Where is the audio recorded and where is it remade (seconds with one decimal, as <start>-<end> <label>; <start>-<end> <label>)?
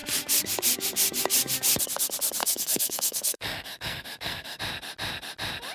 0.0-2.4 recorded; 2.4-4.6 remade; 4.6-5.7 recorded